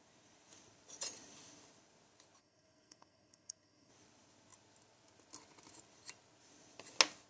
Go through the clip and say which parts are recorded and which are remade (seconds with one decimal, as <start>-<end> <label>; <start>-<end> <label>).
0.0-2.4 recorded; 2.4-3.9 remade; 3.9-7.3 recorded